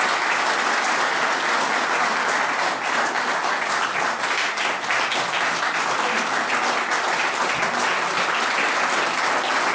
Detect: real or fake real